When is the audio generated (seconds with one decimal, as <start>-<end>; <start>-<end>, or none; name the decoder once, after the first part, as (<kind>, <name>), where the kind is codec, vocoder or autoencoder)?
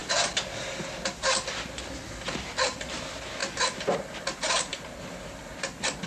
none